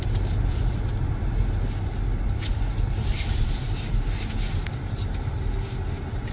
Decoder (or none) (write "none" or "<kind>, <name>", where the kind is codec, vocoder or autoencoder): none